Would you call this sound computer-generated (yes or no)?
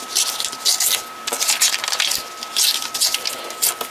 no